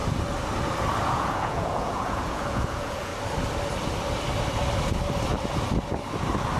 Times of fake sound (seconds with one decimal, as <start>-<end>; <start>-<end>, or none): 1.1-3.1